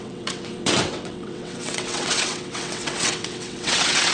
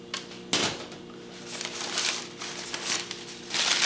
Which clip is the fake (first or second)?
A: first